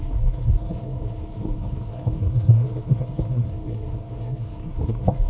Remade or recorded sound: remade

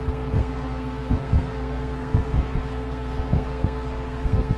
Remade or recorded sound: remade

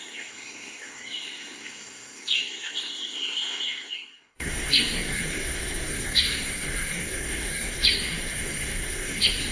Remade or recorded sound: remade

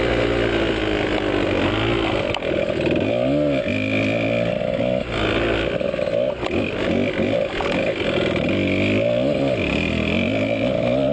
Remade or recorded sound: recorded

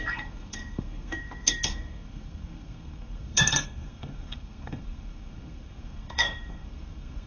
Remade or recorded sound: remade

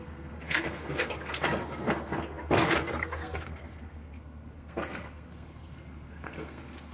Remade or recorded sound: remade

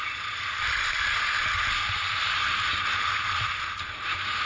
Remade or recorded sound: recorded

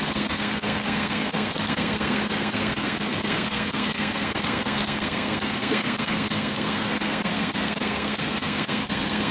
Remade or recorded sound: remade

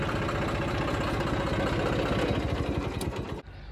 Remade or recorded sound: recorded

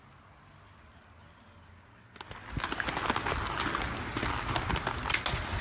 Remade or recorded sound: recorded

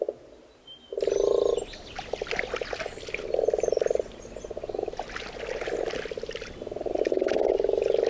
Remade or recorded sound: recorded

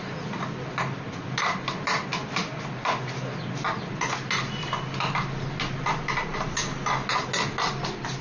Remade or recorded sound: recorded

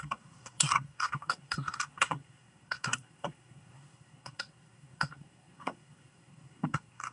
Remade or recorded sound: remade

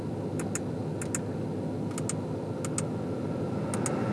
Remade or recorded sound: recorded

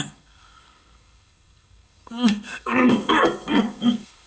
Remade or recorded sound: remade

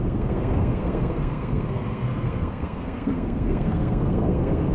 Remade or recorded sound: remade